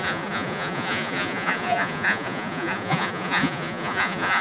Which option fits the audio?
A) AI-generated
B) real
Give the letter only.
A